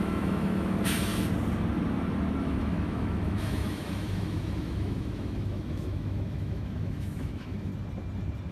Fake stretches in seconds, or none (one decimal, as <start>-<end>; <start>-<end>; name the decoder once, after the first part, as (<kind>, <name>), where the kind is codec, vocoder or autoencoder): 0.0-1.1 (autoencoder, DAC-VAE); 2.4-7.7